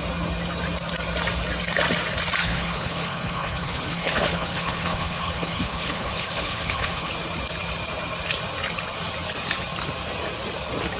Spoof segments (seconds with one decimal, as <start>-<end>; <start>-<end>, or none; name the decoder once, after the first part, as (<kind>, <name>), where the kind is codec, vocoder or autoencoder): 2.4-7.1 (codec, HILCodec)